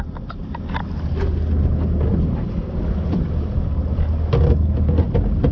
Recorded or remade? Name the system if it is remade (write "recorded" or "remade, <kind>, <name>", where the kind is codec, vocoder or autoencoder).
recorded